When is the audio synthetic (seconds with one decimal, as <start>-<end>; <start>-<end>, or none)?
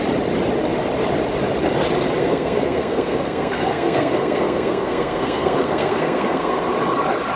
2.2-6.6